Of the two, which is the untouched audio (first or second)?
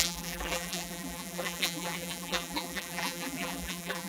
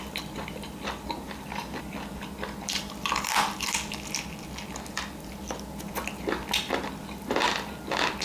second